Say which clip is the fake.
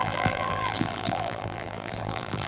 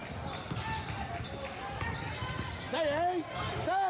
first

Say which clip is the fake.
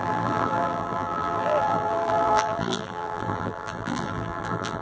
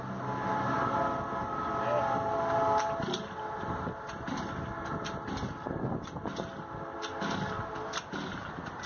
first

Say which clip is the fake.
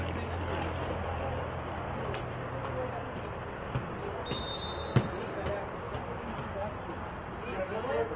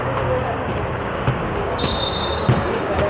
second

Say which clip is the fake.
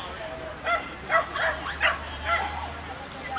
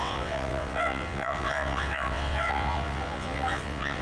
second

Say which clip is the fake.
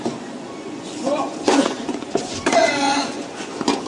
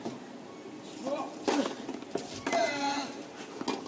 first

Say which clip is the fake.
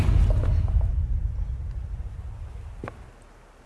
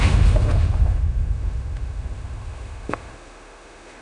second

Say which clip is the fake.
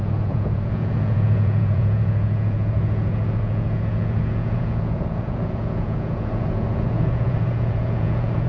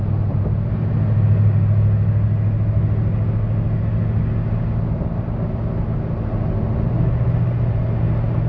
first